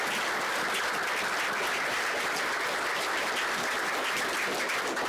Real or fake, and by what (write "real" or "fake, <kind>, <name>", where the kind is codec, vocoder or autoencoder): real